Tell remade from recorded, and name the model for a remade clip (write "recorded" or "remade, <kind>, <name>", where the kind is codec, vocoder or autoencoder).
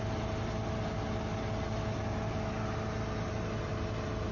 recorded